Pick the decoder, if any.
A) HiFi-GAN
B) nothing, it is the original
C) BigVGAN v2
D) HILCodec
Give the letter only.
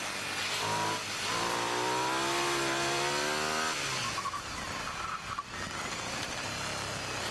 B